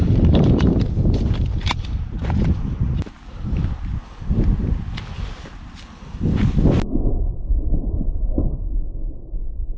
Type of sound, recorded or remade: remade